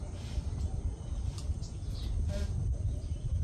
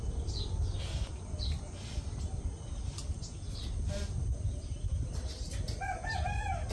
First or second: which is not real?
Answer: first